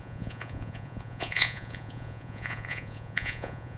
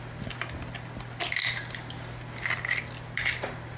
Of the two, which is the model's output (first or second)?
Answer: first